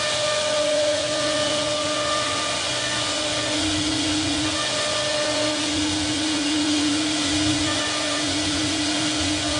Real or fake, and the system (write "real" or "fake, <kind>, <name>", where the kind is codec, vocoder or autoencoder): fake, vocoder, Vocos